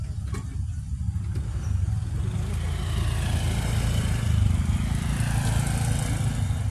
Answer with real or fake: real